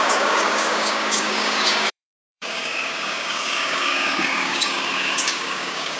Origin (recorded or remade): remade